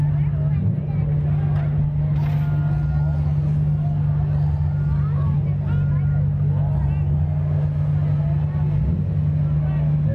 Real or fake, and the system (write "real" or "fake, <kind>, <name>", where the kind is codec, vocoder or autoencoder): real